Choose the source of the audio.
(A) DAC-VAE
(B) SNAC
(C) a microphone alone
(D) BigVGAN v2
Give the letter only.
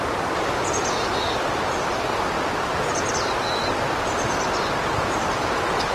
D